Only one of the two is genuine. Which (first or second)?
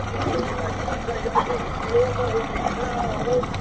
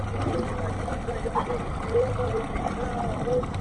first